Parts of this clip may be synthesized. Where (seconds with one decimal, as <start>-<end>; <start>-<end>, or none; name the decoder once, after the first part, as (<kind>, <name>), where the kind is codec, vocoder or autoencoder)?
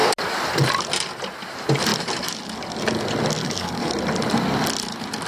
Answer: 3.4-3.9 (codec, DAC)